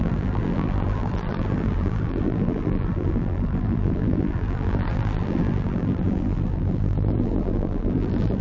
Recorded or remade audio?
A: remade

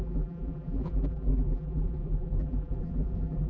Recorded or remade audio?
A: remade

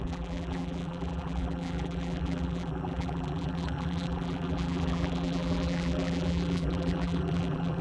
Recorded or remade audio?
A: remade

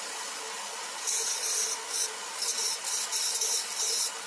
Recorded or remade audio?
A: remade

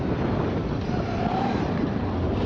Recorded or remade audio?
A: remade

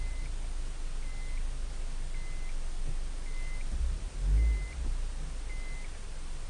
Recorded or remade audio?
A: recorded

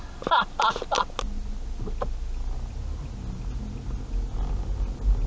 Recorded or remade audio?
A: recorded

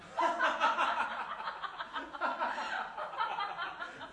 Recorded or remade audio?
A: recorded